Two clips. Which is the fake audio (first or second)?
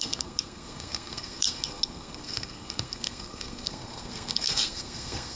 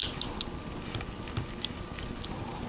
first